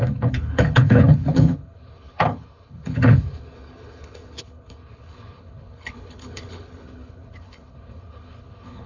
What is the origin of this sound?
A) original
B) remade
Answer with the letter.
B